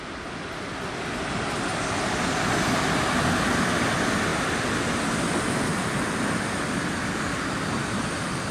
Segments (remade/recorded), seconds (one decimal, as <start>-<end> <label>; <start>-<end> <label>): 0.0-8.5 recorded